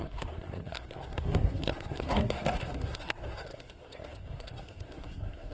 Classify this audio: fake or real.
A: fake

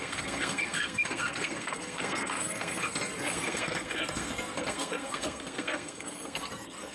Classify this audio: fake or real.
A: fake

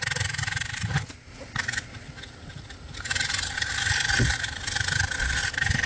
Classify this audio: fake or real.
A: real